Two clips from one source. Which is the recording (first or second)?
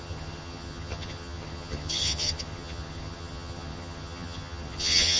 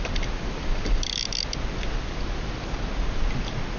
second